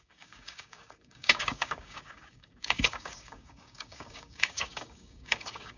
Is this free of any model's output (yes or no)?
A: no